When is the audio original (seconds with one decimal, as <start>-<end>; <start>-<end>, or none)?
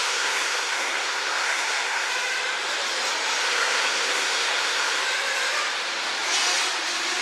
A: 2.1-3.4; 5.0-7.2